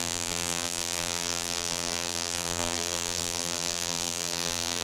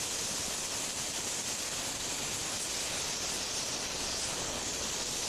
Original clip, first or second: second